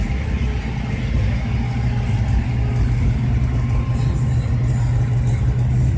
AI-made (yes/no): no